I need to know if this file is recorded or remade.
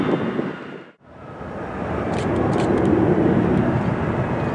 recorded